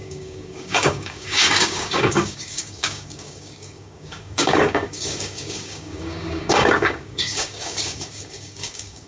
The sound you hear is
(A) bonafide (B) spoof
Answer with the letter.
B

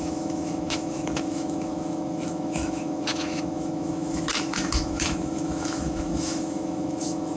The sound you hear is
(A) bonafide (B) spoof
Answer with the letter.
B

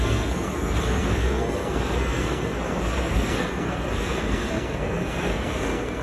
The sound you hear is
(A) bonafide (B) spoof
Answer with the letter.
B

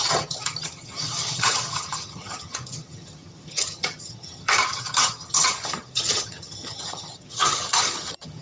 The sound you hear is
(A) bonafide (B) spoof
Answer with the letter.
B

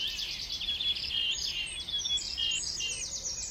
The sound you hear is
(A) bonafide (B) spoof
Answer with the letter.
A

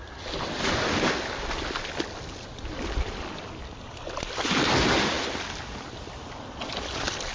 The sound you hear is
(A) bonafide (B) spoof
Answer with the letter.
A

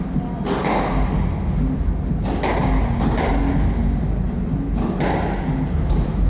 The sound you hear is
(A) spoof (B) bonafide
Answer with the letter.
B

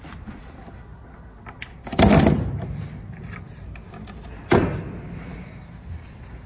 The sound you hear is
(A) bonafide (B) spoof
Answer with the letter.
A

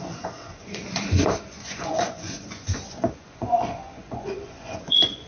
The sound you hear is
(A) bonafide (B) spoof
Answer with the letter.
B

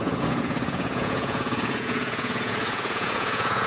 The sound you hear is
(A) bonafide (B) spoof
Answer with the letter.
B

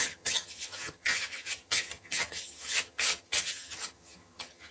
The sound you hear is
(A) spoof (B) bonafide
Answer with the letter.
A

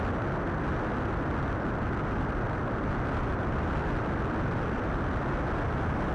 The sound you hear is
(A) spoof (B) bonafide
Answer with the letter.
B